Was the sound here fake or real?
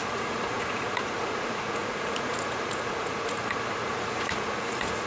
fake